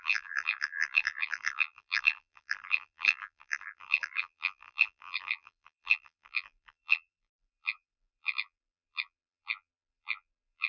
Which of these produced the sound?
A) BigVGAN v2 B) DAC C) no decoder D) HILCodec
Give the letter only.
A